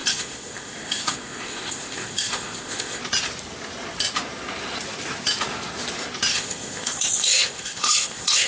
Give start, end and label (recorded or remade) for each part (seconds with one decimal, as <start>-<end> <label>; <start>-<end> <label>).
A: 0.0-3.0 remade; 3.0-6.3 recorded; 6.3-8.5 remade